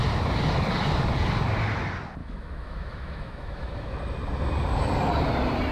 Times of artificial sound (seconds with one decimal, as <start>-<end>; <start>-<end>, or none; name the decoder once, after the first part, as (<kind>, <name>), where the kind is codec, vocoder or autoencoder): 2.2-4.0 (autoencoder, DAC-VAE)